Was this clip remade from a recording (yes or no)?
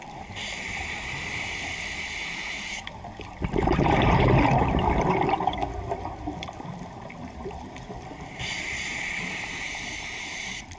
yes